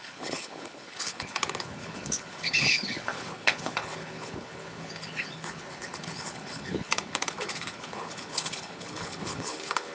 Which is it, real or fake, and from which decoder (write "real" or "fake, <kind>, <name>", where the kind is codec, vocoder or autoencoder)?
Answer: fake, codec, HILCodec